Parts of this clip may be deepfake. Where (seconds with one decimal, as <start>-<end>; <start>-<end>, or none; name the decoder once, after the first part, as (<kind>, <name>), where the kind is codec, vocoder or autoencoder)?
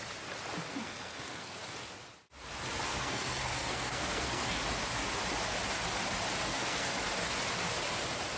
0.7-1.6 (codec, SNAC); 2.9-4.5; 6.5-7.0